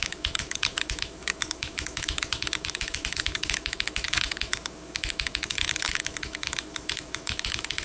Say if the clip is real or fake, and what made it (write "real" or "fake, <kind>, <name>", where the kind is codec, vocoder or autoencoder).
fake, autoencoder, DAC-VAE